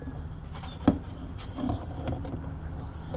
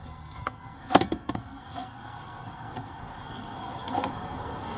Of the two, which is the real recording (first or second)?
first